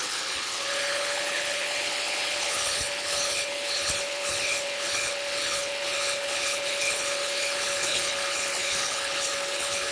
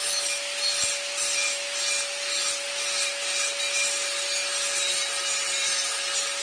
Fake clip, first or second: first